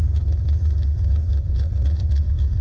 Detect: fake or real fake